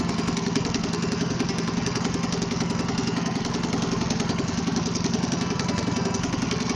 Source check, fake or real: fake